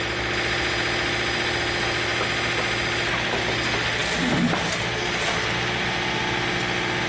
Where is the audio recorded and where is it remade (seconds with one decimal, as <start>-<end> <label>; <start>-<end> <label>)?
0.0-7.1 recorded